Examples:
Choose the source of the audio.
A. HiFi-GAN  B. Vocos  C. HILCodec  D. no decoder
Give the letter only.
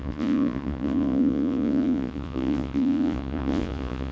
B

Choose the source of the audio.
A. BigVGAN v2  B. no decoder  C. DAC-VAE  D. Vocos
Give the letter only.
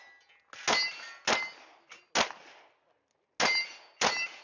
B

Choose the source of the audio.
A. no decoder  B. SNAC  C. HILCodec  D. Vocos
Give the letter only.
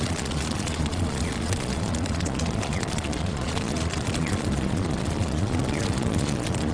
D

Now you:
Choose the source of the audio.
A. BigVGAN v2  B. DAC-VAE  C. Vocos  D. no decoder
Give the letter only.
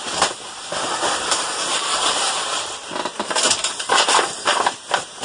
A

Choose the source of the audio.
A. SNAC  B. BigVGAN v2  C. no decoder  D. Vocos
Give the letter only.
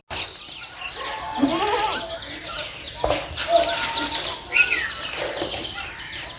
C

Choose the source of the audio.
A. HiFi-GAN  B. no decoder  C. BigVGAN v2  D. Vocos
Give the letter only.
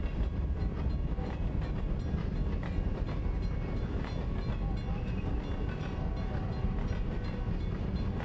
B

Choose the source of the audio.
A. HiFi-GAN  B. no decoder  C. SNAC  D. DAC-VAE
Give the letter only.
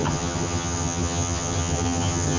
A